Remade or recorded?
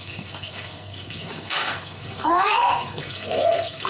remade